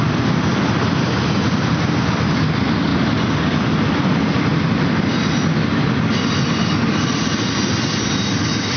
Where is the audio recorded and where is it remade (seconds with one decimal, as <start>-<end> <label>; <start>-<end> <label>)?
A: 0.0-8.8 recorded